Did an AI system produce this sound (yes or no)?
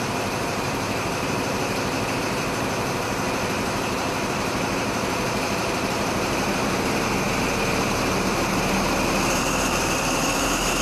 yes